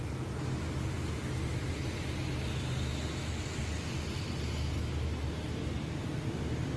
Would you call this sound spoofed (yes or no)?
no